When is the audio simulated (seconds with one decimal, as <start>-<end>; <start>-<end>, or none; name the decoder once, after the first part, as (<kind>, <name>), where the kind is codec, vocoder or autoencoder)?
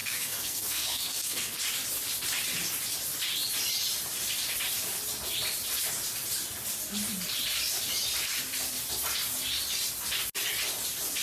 0.0-1.6 (codec, SNAC)